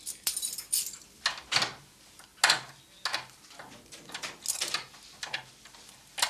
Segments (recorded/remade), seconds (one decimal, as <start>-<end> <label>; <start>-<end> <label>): 0.0-6.3 recorded